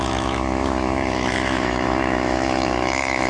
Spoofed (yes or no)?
yes